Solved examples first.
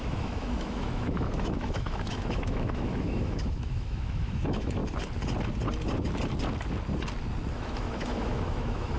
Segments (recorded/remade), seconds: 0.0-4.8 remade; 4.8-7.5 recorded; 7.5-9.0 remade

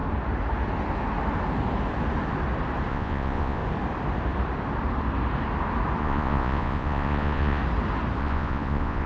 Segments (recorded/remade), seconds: 0.0-2.9 recorded; 2.9-3.6 remade; 3.6-6.0 recorded; 6.0-7.6 remade; 7.6-8.2 recorded; 8.2-9.1 remade

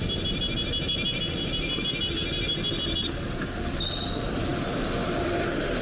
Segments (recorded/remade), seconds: 0.0-4.5 recorded; 4.5-5.8 remade

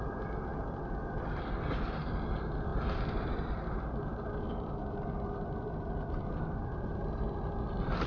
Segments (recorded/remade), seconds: 0.0-8.1 recorded

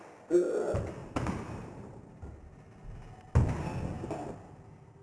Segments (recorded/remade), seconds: 0.0-1.0 recorded; 1.0-2.2 remade; 2.2-5.0 recorded

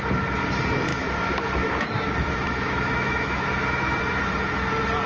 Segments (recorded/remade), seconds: 0.0-0.9 recorded; 0.9-4.0 remade; 4.0-5.1 recorded